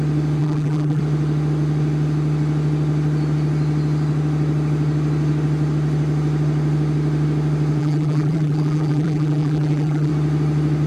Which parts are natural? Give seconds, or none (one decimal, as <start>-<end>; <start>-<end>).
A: 0.0-0.4; 1.0-7.8; 10.1-10.9